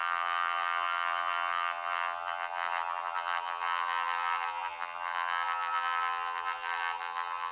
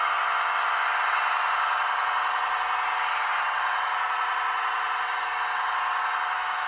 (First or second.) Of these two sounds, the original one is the second